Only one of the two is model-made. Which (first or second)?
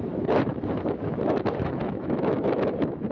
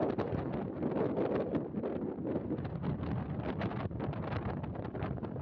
first